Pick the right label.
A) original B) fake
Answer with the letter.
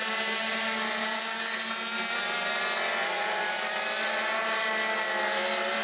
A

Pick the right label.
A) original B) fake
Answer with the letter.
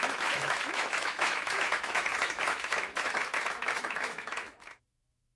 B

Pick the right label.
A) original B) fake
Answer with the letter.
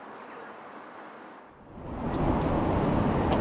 A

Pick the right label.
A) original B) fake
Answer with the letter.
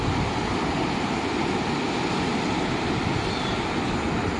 A